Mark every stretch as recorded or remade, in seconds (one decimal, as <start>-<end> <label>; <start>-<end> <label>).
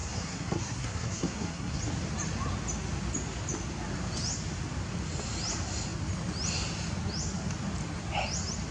0.0-1.8 remade; 1.8-8.7 recorded